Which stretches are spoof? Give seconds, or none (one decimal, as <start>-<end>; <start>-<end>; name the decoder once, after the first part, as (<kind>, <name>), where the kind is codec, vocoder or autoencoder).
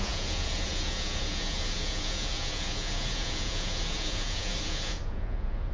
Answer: 0.0-5.7 (vocoder, Vocos)